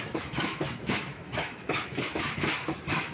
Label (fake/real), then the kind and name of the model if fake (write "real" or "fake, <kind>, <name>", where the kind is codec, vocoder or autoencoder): fake, autoencoder, DAC-VAE